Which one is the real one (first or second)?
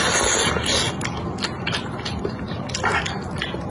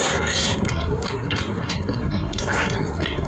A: first